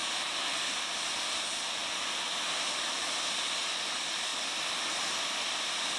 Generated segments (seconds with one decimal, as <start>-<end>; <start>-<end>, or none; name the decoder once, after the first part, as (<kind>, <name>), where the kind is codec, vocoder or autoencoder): 1.1-1.8 (vocoder, BigVGAN v2); 3.9-4.3; 4.9-6.0